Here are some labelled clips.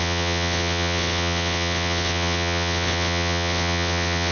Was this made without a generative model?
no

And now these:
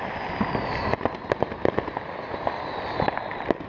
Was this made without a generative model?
yes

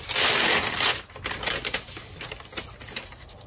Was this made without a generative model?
yes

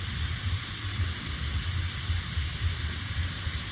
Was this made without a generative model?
yes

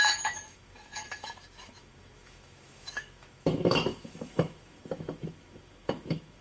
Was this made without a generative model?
no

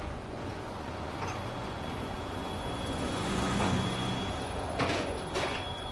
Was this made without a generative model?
no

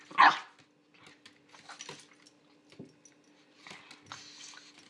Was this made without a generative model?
yes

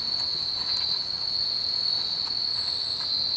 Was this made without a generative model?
yes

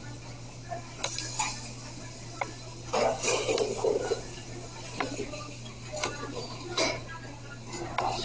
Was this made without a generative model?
yes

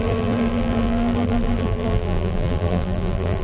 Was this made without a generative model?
no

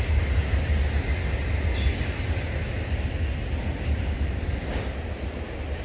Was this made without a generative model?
yes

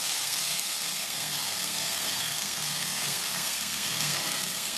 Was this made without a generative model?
no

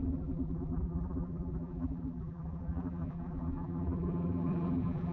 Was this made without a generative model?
no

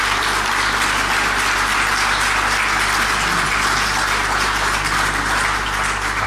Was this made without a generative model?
yes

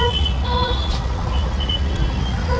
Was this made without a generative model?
no